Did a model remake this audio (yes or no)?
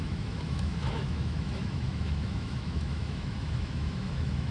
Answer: yes